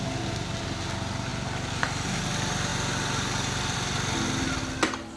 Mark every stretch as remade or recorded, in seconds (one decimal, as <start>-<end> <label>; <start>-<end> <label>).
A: 0.0-5.2 recorded